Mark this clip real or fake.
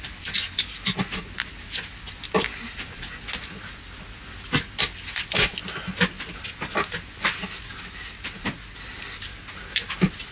real